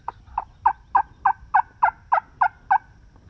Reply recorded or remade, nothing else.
recorded